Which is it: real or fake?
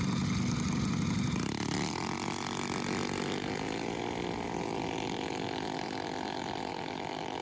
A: real